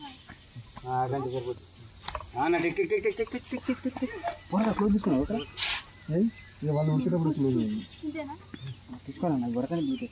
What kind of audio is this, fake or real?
real